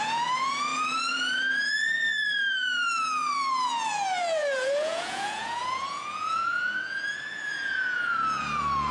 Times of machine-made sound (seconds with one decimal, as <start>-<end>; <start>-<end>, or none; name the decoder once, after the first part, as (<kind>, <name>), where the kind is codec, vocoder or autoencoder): 0.0-8.9 (vocoder, Vocos)